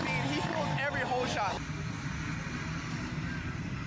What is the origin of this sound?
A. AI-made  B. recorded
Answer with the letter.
B